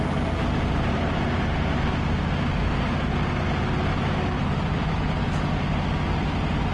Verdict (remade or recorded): recorded